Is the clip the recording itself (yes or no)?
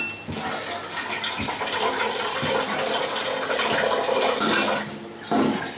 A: yes